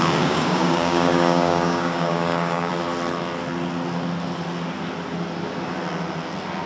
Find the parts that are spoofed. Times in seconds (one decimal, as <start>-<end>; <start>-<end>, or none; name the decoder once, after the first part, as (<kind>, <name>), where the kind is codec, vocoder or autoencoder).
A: 0.0-2.7 (codec, DAC)